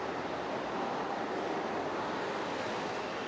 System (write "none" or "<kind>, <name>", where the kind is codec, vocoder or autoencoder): none